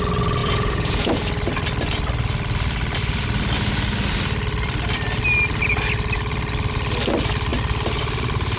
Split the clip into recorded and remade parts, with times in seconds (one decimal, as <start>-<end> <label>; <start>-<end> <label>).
0.0-0.4 recorded; 0.4-1.1 remade; 1.1-8.6 recorded